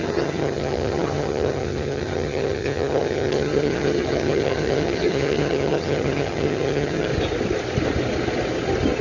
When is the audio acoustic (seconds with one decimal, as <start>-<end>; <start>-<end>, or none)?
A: 7.1-9.0